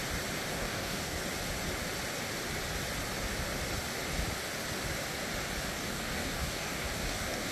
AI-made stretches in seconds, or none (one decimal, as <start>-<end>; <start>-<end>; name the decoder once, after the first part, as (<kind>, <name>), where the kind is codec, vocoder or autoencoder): 0.5-1.2 (codec, DAC); 5.7-7.5